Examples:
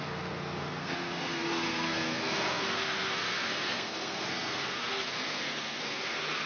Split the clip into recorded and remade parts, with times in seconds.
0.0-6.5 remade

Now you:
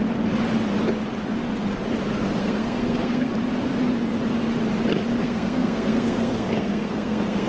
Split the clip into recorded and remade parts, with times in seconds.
0.0-2.4 recorded; 2.4-3.3 remade; 3.3-5.2 recorded; 5.2-7.5 remade

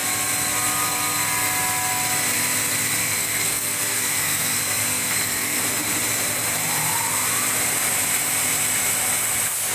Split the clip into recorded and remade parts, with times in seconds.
0.0-3.0 recorded; 3.0-5.6 remade; 5.6-9.7 recorded

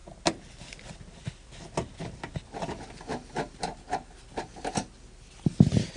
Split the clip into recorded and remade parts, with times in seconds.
0.0-6.0 recorded

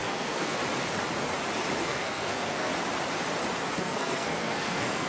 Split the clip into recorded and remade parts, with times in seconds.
0.0-0.6 remade; 0.6-1.8 recorded; 1.8-2.7 remade; 2.7-3.7 recorded; 3.7-5.1 remade

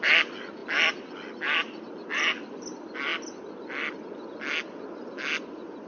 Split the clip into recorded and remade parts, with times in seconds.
0.0-5.9 recorded

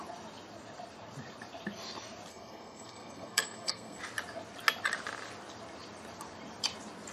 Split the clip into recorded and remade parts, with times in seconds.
0.0-2.3 recorded; 2.3-4.0 remade; 4.0-7.1 recorded